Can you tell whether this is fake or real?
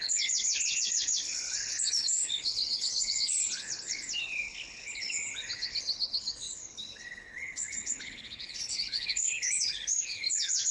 fake